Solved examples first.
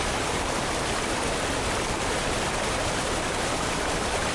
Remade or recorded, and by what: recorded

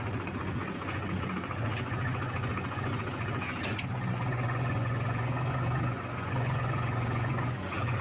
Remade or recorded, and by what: remade, vocoder, Vocos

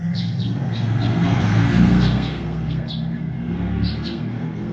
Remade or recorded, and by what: remade, codec, SNAC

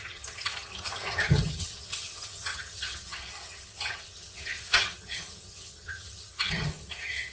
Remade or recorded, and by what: remade, vocoder, HiFi-GAN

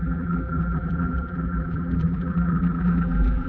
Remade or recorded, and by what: remade, vocoder, BigVGAN v2